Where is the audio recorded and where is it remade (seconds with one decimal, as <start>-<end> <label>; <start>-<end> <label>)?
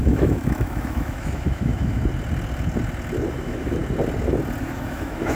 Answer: 0.0-2.0 remade; 2.0-3.3 recorded; 3.3-3.8 remade; 3.8-4.6 recorded; 4.6-5.4 remade